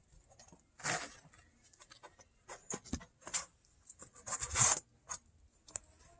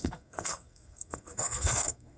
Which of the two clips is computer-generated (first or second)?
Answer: second